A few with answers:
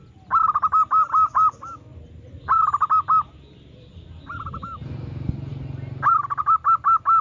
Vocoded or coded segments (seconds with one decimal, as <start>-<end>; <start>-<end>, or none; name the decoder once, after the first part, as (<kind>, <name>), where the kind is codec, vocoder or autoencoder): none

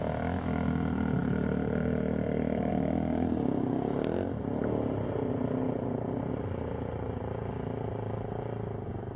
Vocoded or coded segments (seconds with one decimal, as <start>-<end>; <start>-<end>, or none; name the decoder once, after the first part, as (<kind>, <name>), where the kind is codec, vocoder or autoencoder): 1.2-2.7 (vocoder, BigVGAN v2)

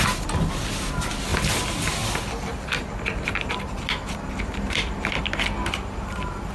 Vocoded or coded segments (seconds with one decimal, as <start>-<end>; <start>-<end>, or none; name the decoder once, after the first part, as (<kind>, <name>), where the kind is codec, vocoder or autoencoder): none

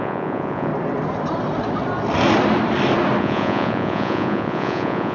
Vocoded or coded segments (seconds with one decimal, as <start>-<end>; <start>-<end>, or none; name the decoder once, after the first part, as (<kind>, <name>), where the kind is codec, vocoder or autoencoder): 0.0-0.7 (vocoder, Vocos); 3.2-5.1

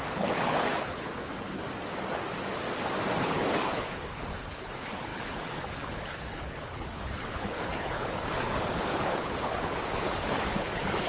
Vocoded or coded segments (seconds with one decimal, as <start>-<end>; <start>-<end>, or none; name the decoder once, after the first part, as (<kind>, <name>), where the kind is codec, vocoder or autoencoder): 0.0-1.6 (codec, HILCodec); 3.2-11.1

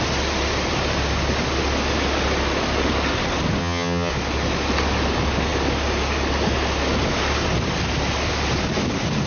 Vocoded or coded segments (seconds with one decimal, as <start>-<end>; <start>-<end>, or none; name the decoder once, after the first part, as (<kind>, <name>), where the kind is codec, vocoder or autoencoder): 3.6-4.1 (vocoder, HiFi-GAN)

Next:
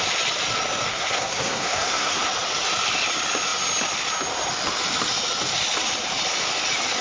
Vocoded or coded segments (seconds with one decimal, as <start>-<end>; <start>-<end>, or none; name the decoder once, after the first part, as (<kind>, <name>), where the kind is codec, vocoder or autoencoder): 0.9-2.2 (codec, SNAC)